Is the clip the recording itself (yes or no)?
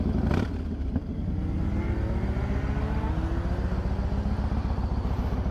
yes